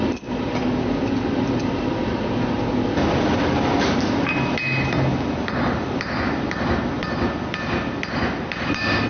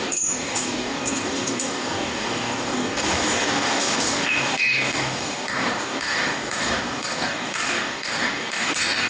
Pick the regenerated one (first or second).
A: second